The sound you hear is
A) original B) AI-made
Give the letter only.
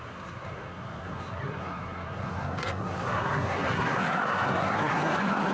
B